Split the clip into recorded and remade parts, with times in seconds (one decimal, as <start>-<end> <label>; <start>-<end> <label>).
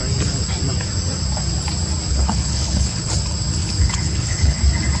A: 0.0-2.1 recorded; 2.1-3.1 remade; 3.1-3.6 recorded; 3.6-4.6 remade; 4.6-5.0 recorded